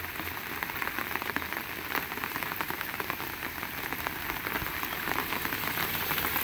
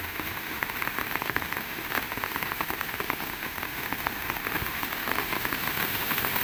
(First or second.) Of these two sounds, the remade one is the second